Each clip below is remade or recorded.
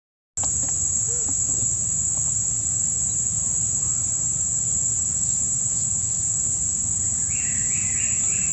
recorded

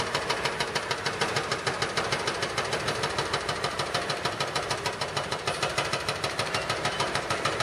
remade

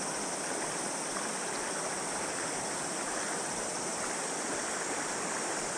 recorded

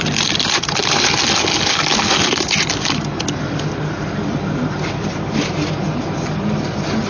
recorded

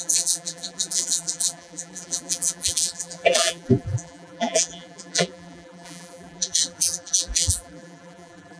remade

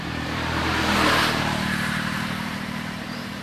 remade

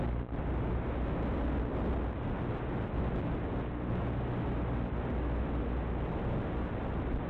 recorded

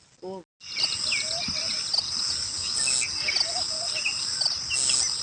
recorded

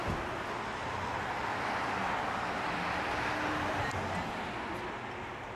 recorded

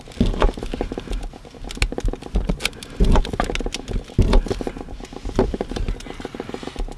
recorded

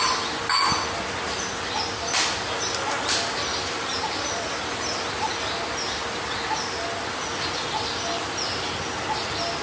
recorded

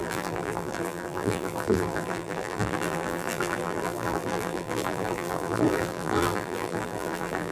remade